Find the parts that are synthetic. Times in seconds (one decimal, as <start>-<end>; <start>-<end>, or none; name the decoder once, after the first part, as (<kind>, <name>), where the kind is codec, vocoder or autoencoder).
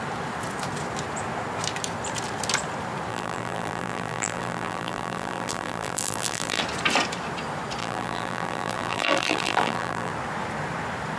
3.1-6.6 (vocoder, BigVGAN v2); 7.8-10.1